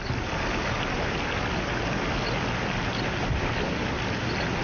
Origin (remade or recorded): recorded